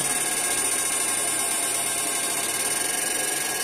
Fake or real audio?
real